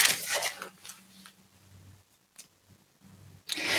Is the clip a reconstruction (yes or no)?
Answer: no